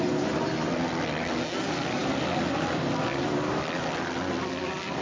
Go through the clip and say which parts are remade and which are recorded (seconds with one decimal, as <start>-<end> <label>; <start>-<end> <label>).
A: 0.0-5.0 recorded